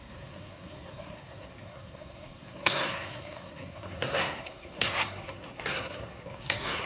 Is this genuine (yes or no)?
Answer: no